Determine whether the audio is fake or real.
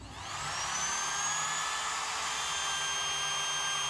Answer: real